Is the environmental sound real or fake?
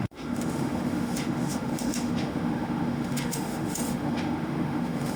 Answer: fake